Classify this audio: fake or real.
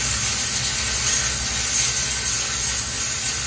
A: real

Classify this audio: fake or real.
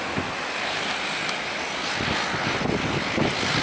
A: real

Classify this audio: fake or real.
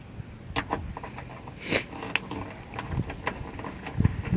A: real